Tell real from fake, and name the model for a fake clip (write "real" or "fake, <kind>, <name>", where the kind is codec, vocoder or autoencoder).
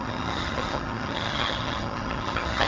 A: fake, vocoder, HiFi-GAN